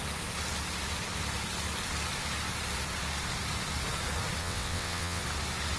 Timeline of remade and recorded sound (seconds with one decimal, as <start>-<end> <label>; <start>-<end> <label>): 0.0-4.4 recorded; 4.4-5.2 remade; 5.2-5.8 recorded